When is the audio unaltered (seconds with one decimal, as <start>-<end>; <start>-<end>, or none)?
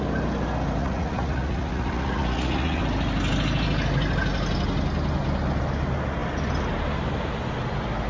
0.0-0.8; 2.8-8.1